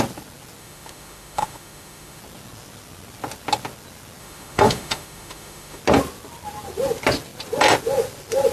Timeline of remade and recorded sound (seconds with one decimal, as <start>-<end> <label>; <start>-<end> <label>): 0.0-0.6 recorded; 0.6-2.2 remade; 2.2-4.2 recorded; 4.2-5.8 remade; 5.8-8.5 recorded